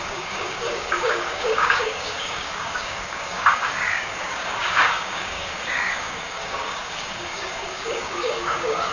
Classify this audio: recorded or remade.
remade